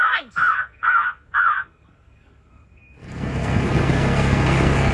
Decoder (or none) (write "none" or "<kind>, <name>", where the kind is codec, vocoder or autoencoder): codec, SNAC